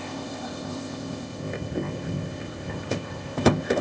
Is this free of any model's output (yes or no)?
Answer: no